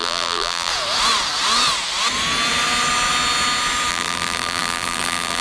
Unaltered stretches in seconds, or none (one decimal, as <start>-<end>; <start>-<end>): 0.7-3.9